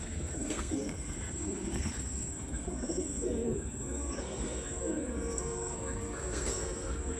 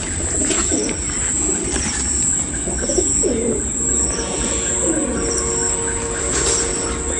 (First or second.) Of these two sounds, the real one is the second